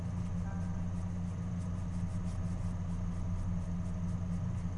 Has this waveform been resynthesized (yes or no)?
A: no